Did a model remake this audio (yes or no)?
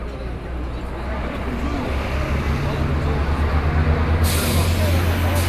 no